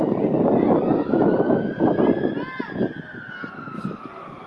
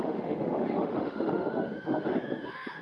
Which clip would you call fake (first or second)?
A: second